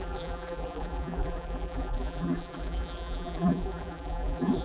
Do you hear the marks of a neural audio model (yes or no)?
yes